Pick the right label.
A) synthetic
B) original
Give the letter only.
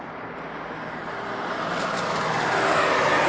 B